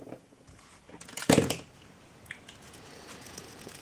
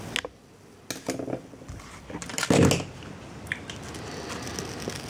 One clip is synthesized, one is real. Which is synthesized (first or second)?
first